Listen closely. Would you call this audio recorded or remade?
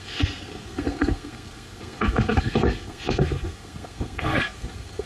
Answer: remade